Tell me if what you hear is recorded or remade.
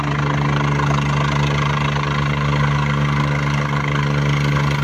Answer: recorded